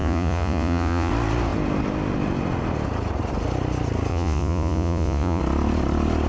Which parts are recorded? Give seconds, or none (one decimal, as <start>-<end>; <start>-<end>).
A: 1.1-4.1; 5.4-6.3